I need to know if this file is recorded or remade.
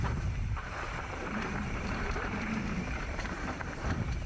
remade